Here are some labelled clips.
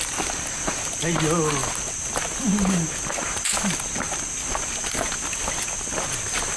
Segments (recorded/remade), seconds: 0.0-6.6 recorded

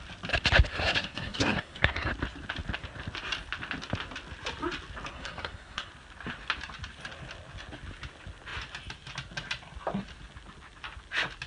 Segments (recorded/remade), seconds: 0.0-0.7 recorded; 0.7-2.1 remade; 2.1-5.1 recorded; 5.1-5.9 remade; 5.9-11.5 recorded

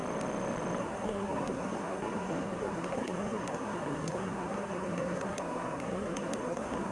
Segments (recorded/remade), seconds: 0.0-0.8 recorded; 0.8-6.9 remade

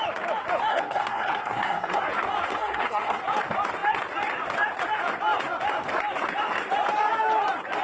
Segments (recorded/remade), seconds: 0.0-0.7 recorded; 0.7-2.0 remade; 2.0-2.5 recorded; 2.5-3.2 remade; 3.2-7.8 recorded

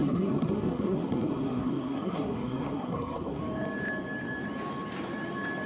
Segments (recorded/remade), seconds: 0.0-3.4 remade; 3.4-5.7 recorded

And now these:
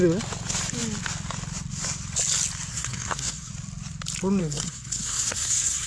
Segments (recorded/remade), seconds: 0.0-2.7 recorded; 2.7-3.5 remade; 3.5-4.4 recorded; 4.4-5.9 remade

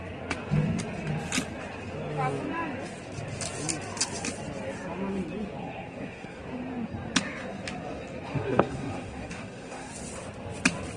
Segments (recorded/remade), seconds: 0.0-5.6 recorded; 5.6-6.4 remade; 6.4-8.3 recorded; 8.3-9.9 remade; 9.9-11.0 recorded